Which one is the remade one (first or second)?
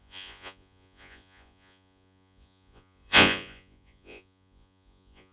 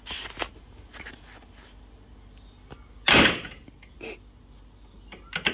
first